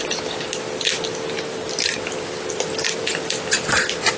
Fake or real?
real